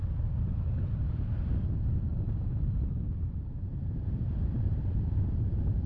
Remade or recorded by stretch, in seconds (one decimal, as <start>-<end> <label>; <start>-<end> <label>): 0.0-2.1 recorded; 2.1-5.9 remade